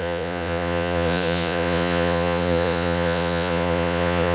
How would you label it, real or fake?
fake